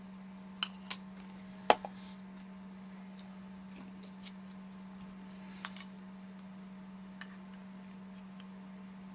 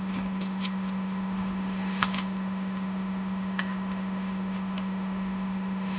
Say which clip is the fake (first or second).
second